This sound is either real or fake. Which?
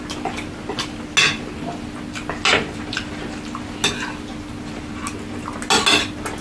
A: real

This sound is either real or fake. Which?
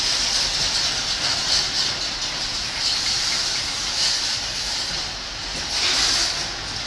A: real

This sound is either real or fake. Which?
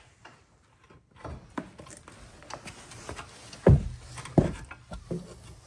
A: real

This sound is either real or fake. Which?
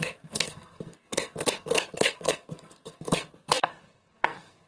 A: fake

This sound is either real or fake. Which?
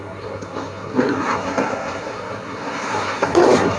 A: fake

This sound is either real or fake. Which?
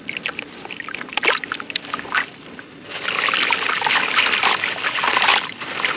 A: real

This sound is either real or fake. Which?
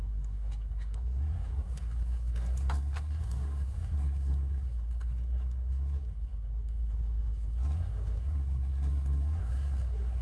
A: fake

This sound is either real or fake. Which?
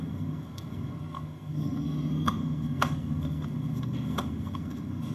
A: fake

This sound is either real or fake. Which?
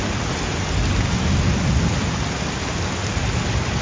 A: real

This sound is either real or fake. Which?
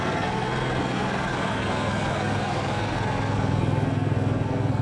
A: fake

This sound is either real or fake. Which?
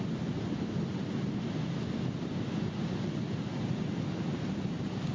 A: real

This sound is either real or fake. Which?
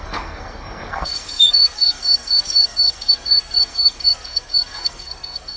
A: fake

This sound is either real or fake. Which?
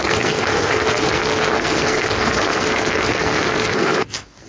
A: fake